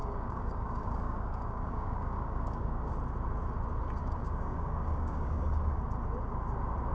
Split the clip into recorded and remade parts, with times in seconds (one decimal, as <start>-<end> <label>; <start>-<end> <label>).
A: 0.0-2.9 remade; 2.9-4.0 recorded; 4.0-5.8 remade; 5.8-6.9 recorded